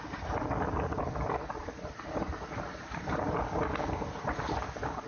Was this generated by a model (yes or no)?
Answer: no